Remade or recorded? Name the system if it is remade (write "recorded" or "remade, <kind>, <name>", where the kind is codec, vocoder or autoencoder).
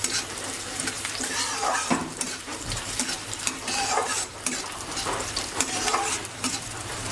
remade, vocoder, BigVGAN v2